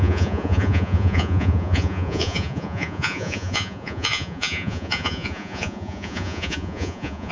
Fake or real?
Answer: fake